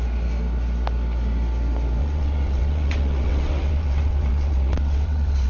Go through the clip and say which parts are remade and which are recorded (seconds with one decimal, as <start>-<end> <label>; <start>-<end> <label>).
0.0-2.0 recorded; 2.0-5.5 remade